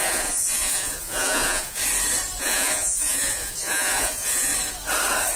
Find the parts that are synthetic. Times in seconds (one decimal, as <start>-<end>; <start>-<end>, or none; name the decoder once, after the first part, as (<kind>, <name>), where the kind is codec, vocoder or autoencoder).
0.0-1.8 (vocoder, Vocos); 2.4-4.5